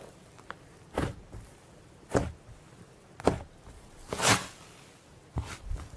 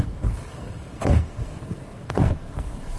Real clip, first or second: first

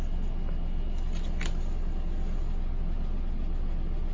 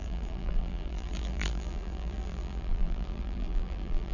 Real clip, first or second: first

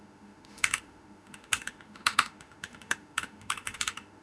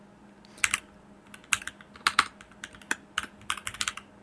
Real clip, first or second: second